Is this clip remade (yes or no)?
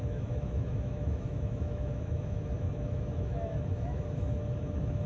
yes